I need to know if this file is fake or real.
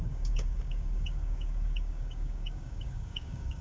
fake